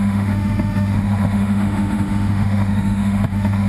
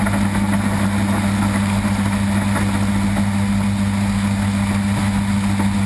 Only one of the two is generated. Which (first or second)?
first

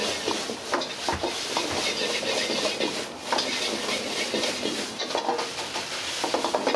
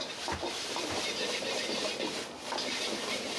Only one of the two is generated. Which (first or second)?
second